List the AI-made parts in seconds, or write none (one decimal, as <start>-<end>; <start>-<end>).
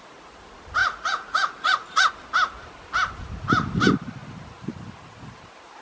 0.8-2.1